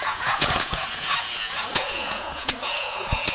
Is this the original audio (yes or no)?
no